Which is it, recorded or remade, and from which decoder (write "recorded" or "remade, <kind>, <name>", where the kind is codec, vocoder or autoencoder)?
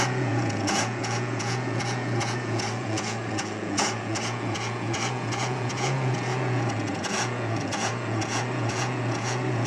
remade, vocoder, Vocos